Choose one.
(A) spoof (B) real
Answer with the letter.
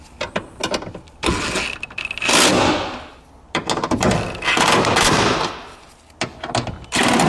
B